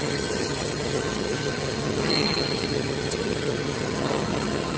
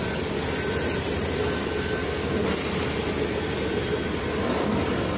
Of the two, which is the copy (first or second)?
first